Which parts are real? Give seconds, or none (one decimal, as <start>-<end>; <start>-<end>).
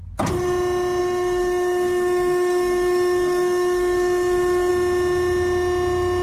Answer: 0.0-1.0; 4.7-6.2